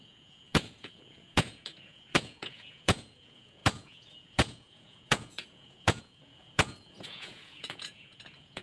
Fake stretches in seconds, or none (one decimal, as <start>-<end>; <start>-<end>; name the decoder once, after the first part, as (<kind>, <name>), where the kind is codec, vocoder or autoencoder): 0.0-8.6 (vocoder, Vocos)

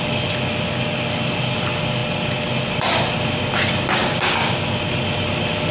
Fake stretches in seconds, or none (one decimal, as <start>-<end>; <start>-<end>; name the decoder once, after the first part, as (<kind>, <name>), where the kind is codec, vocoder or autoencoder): 4.0-4.8 (codec, DAC)

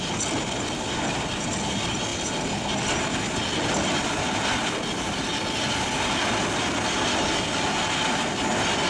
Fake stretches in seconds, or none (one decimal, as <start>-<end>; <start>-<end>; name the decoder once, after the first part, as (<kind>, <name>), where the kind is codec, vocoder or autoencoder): none

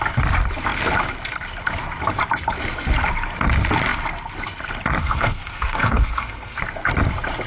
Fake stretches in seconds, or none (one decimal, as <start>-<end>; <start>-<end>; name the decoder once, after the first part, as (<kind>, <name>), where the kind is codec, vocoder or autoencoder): 5.0-6.6 (codec, SNAC)

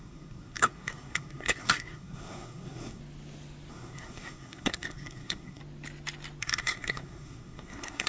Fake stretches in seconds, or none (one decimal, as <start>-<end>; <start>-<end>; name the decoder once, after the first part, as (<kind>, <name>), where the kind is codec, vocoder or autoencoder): 0.0-3.0 (codec, SNAC); 3.7-5.6; 6.4-8.1

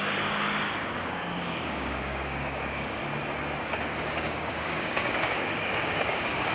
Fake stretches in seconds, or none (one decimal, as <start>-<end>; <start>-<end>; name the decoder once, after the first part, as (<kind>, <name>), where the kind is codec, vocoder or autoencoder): 0.0-3.0 (codec, DAC); 3.6-6.5

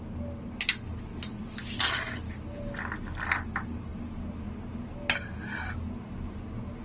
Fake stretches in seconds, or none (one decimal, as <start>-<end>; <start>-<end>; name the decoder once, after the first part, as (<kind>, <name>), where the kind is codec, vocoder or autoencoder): none